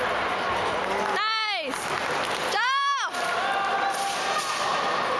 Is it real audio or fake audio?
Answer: real